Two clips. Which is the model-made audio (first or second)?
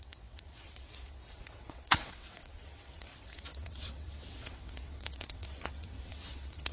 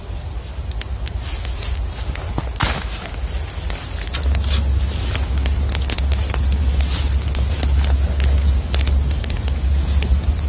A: first